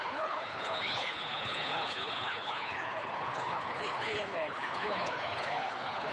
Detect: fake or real fake